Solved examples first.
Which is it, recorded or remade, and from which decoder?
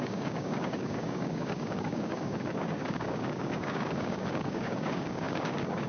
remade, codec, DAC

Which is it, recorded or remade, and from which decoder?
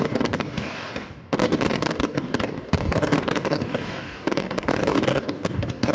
remade, codec, DAC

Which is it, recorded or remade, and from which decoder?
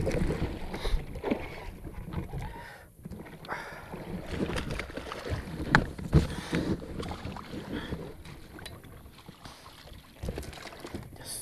recorded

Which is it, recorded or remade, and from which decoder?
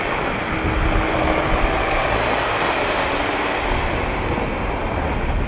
recorded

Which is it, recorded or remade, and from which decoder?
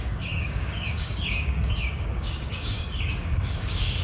remade, codec, DAC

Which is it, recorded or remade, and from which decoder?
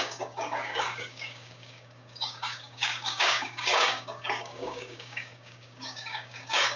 remade, codec, DAC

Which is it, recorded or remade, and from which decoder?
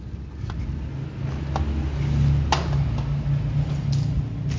recorded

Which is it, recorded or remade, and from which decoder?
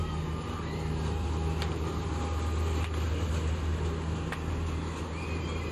recorded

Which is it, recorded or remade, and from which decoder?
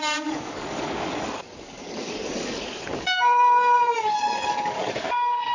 remade, codec, DAC